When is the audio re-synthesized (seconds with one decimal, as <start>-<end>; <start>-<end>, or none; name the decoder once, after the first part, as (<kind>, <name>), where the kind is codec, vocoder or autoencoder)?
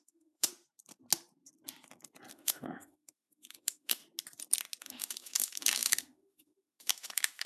0.0-0.5 (autoencoder, DAC-VAE); 2.3-4.0; 4.8-7.5